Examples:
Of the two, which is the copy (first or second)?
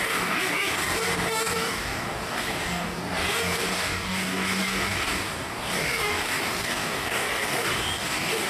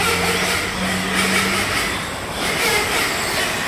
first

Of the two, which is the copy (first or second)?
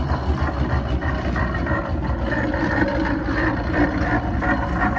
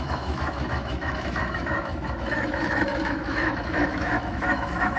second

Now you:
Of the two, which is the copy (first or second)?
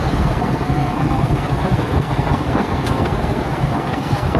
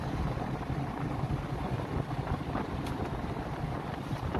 first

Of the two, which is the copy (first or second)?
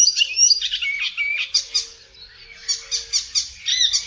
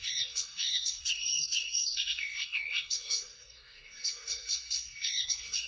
second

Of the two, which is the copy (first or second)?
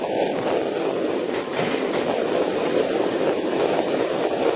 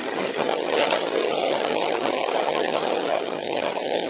second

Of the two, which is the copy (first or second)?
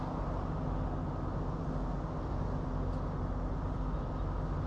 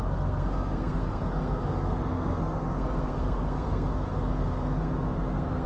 second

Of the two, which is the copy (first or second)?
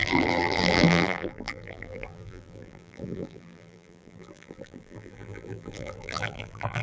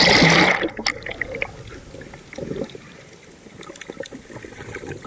first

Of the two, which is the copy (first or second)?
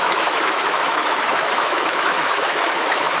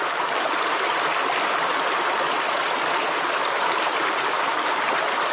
first